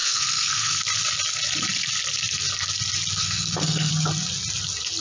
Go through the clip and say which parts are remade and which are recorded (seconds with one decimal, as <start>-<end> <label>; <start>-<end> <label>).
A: 0.0-0.8 remade; 0.8-3.2 recorded; 3.2-3.9 remade; 3.9-5.0 recorded